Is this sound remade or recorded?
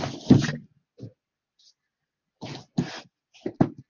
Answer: recorded